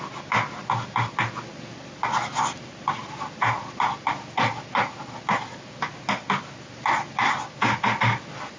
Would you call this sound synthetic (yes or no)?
no